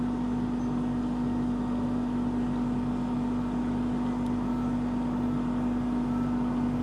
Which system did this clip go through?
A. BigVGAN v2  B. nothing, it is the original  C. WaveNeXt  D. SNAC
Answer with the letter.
B